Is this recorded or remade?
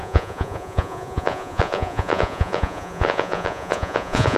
remade